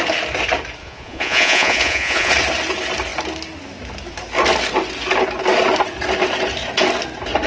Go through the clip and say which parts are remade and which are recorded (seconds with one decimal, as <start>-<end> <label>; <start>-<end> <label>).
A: 0.0-0.8 recorded; 0.8-2.3 remade; 2.3-7.5 recorded